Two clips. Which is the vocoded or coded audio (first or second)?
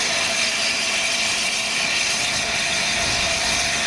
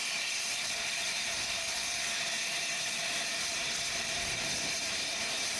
second